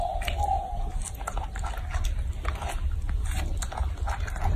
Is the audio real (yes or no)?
yes